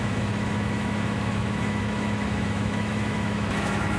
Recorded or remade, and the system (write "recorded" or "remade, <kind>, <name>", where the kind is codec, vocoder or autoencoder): remade, autoencoder, DAC-VAE